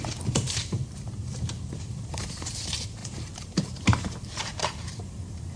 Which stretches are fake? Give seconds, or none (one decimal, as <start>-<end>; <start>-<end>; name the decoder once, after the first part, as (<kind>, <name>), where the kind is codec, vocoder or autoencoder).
0.0-5.6 (vocoder, BigVGAN v2)